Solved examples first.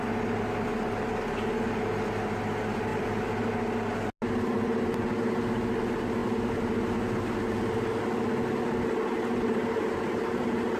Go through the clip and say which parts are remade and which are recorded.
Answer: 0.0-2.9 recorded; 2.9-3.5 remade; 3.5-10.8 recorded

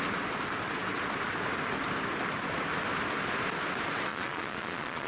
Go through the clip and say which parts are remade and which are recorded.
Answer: 0.0-4.1 recorded; 4.1-5.1 remade

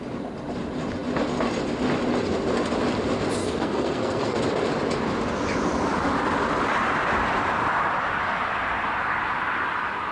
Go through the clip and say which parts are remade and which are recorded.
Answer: 0.0-3.4 recorded; 3.4-4.4 remade; 4.4-10.1 recorded

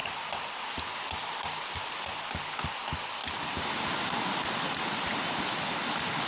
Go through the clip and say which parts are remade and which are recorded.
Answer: 0.0-6.3 recorded

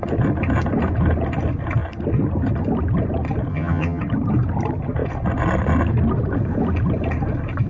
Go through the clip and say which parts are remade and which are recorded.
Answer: 0.0-3.5 recorded; 3.5-4.0 remade; 4.0-7.7 recorded

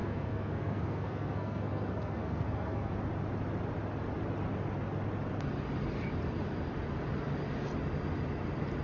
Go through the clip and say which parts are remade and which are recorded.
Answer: 0.0-2.9 remade; 2.9-8.8 recorded